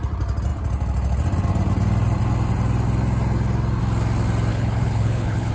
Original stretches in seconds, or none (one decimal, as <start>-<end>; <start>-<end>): 0.0-4.5